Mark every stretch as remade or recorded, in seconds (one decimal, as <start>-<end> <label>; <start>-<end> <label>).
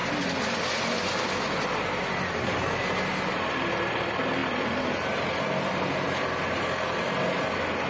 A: 0.0-7.9 recorded